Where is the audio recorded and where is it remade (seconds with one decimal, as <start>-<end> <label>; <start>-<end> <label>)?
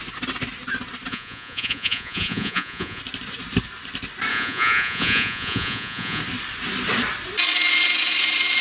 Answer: 0.0-1.1 recorded; 1.1-3.0 remade; 3.0-4.3 recorded; 4.3-6.2 remade; 6.2-8.6 recorded